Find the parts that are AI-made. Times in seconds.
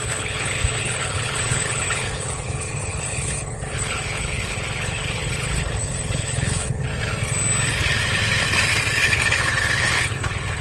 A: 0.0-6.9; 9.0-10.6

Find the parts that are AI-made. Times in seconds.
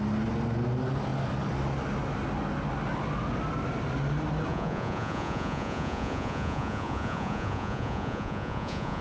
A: 4.5-9.0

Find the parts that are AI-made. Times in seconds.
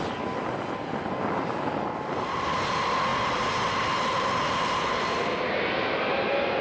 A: none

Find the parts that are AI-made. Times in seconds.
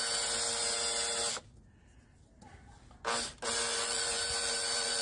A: 3.7-5.0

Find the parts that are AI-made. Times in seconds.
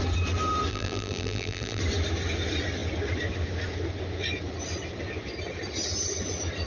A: 0.7-1.8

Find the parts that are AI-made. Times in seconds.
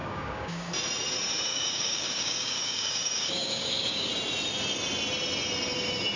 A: 0.0-0.7; 1.5-4.1